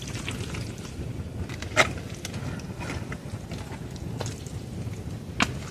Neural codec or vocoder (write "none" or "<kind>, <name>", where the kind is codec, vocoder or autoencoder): none